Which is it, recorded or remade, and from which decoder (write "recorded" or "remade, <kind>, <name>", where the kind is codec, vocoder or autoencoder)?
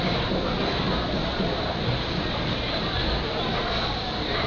recorded